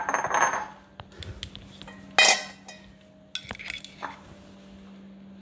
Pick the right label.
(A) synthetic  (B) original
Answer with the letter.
B